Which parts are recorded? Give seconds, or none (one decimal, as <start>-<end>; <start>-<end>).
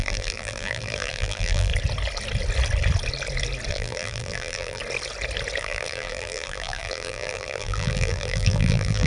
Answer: 1.7-3.7; 4.8-5.6